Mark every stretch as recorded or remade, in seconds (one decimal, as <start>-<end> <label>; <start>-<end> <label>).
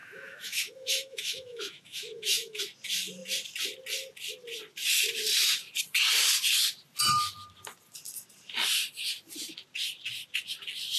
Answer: 0.0-2.6 remade; 2.6-11.0 recorded